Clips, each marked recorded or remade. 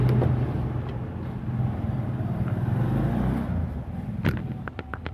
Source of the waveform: recorded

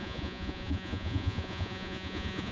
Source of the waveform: remade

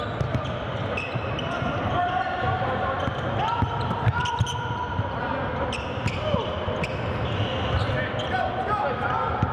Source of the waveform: recorded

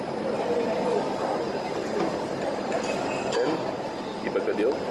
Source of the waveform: recorded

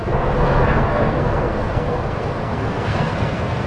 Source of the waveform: remade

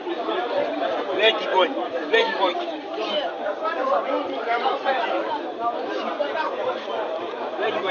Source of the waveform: remade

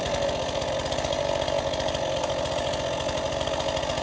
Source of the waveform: recorded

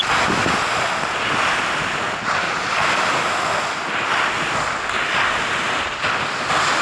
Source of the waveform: recorded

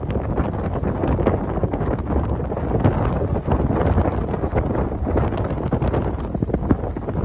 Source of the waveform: recorded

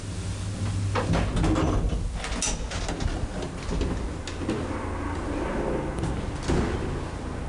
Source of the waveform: recorded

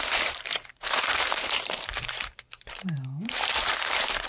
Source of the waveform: remade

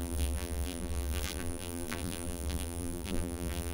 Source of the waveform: remade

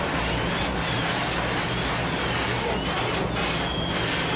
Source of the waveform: recorded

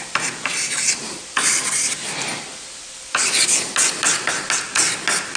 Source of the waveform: recorded